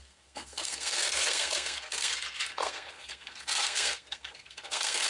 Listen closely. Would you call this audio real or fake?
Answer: fake